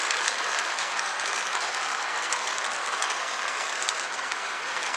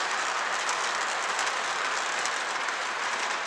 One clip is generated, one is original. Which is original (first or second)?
second